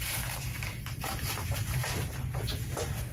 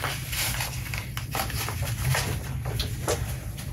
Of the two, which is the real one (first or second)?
second